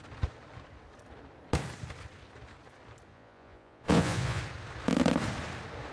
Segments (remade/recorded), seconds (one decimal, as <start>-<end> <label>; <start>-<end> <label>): 0.0-3.1 recorded; 3.1-4.4 remade; 4.4-5.9 recorded